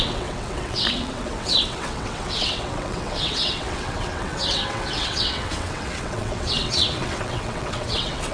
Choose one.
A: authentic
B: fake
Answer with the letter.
B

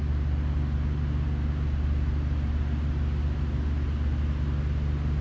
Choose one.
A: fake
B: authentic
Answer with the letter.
B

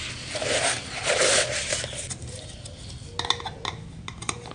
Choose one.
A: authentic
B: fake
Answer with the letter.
A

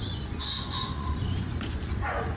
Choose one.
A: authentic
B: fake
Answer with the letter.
B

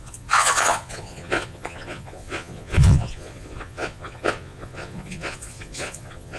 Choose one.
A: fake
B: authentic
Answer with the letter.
A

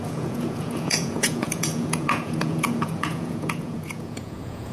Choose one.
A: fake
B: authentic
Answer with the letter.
A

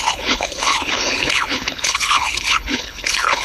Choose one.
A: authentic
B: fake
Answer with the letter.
B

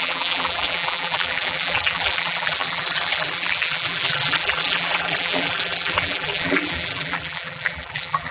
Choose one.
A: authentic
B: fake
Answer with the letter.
B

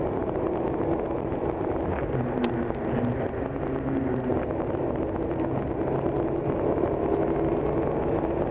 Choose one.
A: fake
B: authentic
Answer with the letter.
B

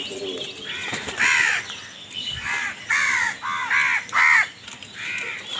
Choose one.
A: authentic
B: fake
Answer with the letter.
A